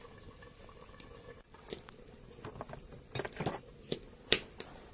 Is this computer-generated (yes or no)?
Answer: yes